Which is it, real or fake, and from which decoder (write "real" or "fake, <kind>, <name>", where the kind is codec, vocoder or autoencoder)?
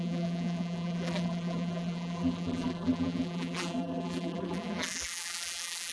fake, vocoder, BigVGAN v2